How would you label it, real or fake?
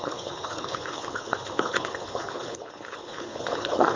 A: fake